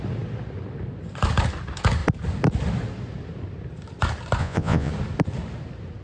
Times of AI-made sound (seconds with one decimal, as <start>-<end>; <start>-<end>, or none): 4.4-4.9